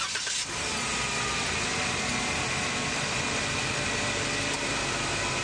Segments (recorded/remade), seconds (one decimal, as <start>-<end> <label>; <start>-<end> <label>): 0.0-5.4 recorded